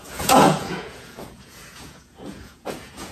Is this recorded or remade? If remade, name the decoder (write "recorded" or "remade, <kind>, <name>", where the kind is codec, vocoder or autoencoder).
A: remade, vocoder, Vocos